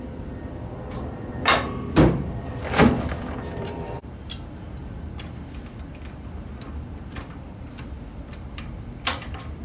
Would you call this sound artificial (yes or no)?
yes